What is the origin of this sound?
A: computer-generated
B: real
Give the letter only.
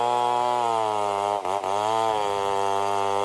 B